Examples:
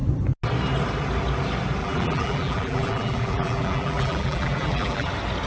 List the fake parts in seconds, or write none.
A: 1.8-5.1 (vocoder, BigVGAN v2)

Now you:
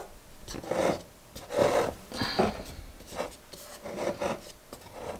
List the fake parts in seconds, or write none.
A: none

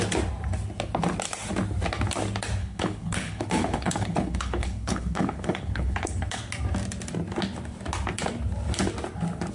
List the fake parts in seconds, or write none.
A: 2.6-6.4 (codec, HILCodec)

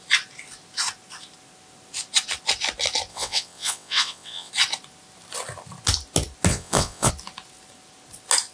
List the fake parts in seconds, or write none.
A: 3.1-4.5 (vocoder, WaveNeXt); 6.5-7.1

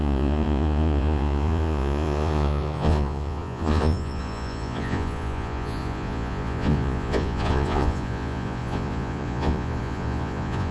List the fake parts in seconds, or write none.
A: 0.0-10.7 (vocoder, Vocos)

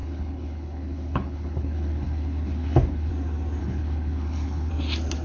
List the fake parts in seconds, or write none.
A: 0.0-3.1 (codec, HILCodec); 3.6-4.7

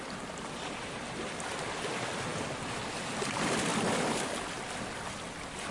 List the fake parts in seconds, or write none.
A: none